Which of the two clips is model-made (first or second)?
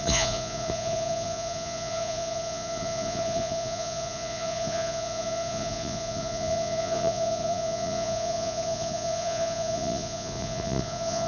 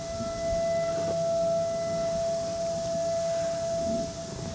first